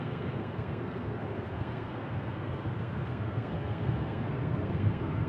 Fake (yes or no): yes